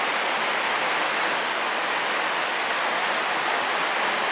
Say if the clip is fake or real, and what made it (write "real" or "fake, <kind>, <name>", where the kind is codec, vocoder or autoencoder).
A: real